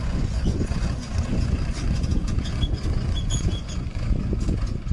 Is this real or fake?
fake